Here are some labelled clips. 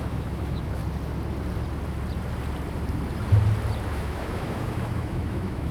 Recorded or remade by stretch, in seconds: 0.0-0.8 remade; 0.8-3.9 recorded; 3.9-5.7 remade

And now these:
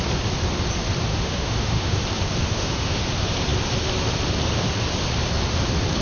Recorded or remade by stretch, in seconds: 0.0-1.1 recorded; 1.1-2.0 remade; 2.0-2.4 recorded; 2.4-3.0 remade; 3.0-6.0 recorded

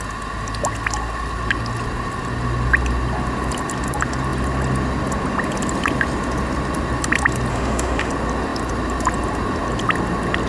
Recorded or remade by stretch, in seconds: 0.0-7.5 recorded; 7.5-8.1 remade; 8.1-10.5 recorded

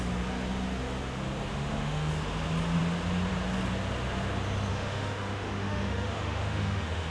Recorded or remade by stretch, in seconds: 0.0-1.5 recorded; 1.5-2.1 remade; 2.1-4.7 recorded; 4.7-7.1 remade

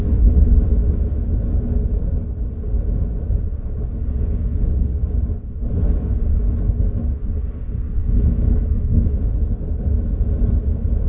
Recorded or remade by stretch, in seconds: 0.0-8.0 recorded; 8.0-9.0 remade; 9.0-11.1 recorded

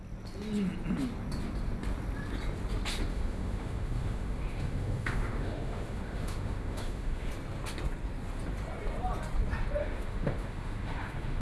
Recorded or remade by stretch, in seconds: 0.0-3.1 recorded; 3.1-7.3 remade; 7.3-9.8 recorded; 9.8-11.4 remade

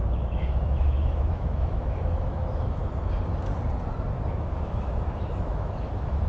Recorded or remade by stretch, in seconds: 0.0-2.8 remade; 2.8-4.3 recorded; 4.3-6.3 remade